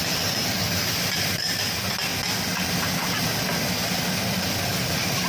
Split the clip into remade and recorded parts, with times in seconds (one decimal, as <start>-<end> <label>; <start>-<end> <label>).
0.0-5.3 recorded